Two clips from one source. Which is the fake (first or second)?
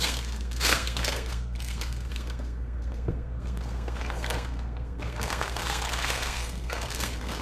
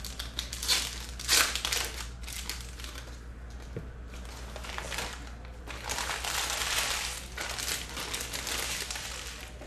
first